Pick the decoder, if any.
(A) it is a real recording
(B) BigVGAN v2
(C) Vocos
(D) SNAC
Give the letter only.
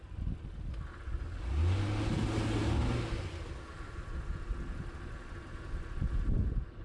A